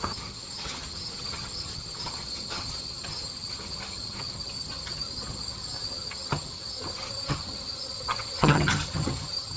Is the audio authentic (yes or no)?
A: no